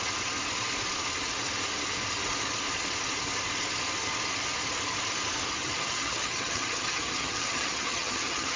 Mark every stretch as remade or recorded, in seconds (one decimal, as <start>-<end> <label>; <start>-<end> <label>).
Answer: 0.0-5.6 recorded; 5.6-8.6 remade